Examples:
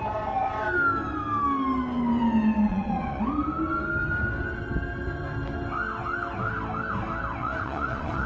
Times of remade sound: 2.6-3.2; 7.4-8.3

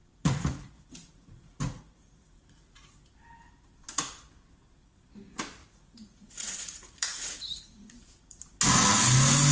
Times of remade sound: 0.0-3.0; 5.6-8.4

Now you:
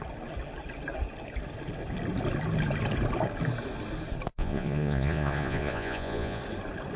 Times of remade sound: 4.3-6.4

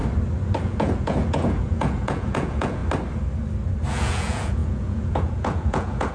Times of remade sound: 0.6-2.8; 3.9-6.1

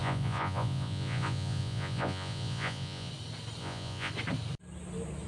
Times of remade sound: 0.0-3.1; 3.6-4.1

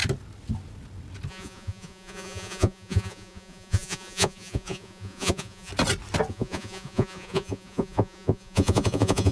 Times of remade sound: 1.3-5.7; 6.3-9.3